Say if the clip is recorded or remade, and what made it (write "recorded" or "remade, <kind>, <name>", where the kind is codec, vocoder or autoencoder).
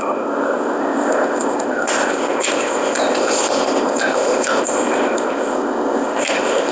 remade, codec, ZipCodec